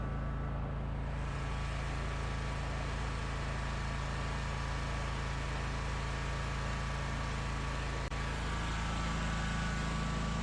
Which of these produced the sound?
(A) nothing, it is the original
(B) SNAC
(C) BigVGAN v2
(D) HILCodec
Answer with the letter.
A